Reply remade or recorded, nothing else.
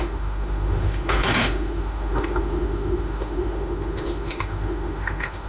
remade